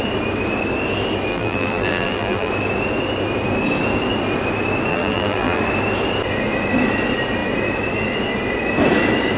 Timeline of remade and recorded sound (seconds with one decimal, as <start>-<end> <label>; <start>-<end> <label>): 0.0-1.3 recorded; 1.3-2.5 remade; 2.5-4.9 recorded; 4.9-5.6 remade; 5.6-9.4 recorded